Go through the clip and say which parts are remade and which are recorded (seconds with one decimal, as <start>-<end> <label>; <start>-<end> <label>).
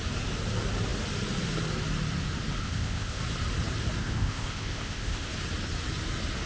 0.0-2.6 recorded; 2.6-3.2 remade; 3.2-4.0 recorded; 4.0-5.3 remade; 5.3-6.5 recorded